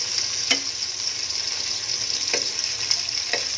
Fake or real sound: real